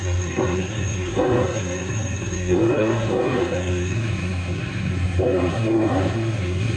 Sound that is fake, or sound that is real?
fake